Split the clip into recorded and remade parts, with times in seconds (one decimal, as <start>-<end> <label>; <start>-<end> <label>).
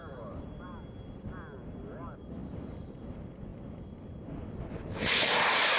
0.0-5.8 remade